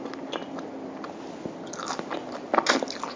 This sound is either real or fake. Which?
real